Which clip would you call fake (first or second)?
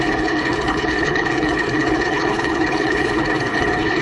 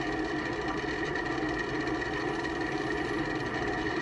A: first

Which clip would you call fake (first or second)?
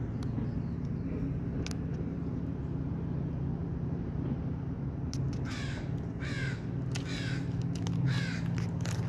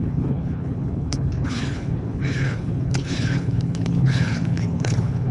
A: second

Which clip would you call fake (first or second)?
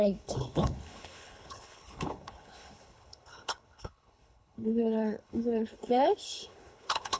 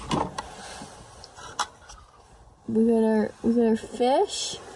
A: first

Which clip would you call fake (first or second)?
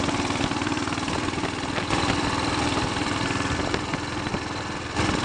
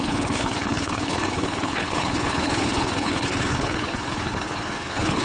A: second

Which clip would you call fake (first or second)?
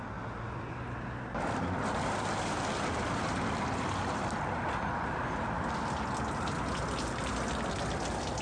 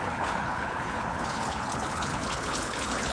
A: second